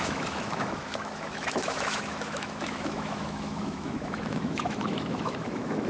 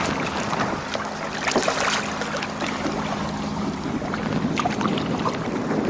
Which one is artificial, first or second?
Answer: first